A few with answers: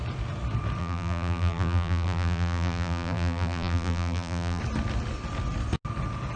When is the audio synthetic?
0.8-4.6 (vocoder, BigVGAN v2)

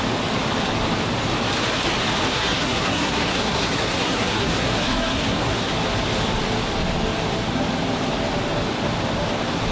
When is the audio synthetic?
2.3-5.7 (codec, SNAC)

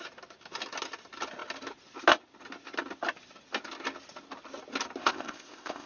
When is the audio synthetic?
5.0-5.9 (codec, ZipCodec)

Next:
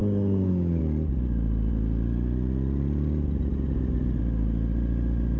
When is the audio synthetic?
0.0-0.8 (codec, HILCodec)

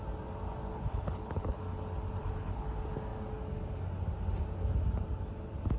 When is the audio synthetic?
0.7-1.6 (codec, HILCodec); 2.2-2.7

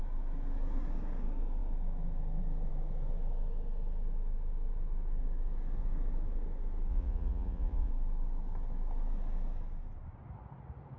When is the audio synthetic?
6.9-7.9 (vocoder, Vocos)

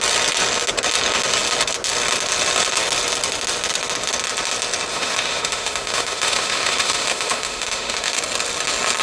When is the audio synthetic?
4.9-8.2 (autoencoder, DAC-VAE)